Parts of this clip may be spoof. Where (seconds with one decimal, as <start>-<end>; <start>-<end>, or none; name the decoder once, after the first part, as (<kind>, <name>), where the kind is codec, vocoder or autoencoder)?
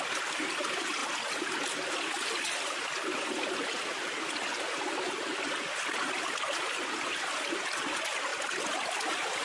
none